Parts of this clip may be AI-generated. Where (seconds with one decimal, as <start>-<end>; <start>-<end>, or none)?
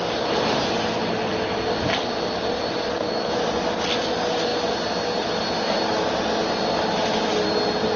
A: none